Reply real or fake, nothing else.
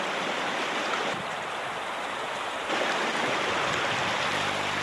real